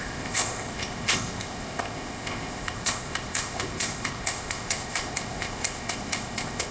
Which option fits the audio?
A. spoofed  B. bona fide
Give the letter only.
A